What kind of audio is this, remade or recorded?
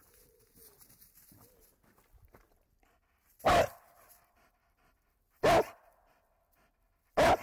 recorded